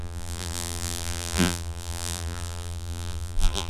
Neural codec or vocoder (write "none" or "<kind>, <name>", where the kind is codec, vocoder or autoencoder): vocoder, BigVGAN v2